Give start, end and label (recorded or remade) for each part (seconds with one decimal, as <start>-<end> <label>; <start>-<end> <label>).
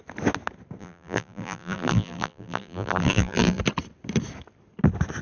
0.0-0.8 recorded; 0.8-3.6 remade; 3.6-5.2 recorded